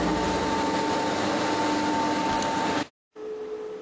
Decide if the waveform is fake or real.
real